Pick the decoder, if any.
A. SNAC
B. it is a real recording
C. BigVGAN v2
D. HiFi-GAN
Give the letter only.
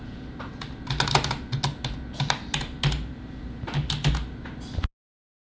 B